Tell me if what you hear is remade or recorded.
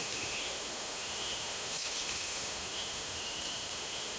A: remade